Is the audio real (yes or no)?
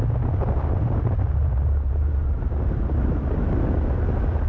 yes